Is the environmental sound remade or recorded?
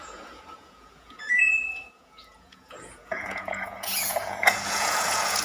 remade